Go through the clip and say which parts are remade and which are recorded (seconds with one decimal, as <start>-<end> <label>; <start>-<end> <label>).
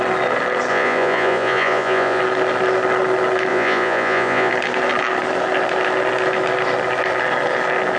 0.0-0.7 recorded; 0.7-2.2 remade; 2.2-3.5 recorded; 3.5-4.5 remade; 4.5-8.0 recorded